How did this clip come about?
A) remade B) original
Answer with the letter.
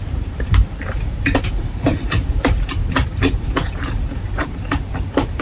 A